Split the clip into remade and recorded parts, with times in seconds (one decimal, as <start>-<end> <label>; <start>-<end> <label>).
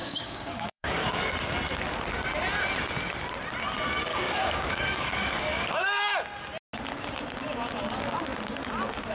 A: 0.0-1.3 remade; 1.3-4.1 recorded; 4.1-6.0 remade; 6.0-9.1 recorded